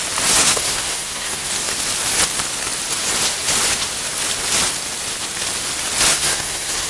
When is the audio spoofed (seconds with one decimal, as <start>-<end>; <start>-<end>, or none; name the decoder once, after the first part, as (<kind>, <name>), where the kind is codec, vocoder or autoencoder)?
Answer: 0.4-1.5 (codec, SNAC); 6.1-6.9